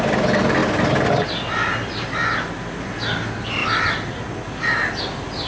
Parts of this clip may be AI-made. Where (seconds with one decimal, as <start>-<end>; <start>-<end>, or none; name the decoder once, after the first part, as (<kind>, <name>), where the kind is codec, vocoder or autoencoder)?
3.6-4.3 (vocoder, BigVGAN v2)